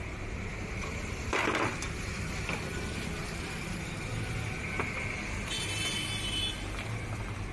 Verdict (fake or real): real